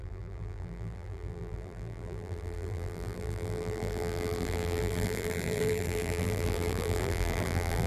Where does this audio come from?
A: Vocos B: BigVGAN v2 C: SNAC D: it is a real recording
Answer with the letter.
B